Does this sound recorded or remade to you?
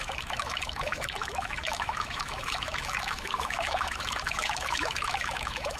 remade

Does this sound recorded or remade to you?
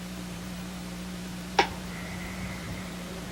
remade